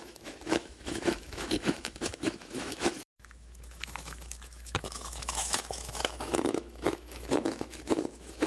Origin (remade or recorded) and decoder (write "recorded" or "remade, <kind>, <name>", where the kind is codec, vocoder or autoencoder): remade, autoencoder, DAC-VAE